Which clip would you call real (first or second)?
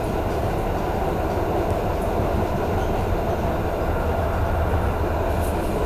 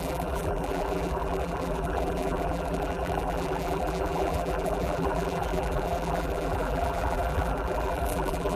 first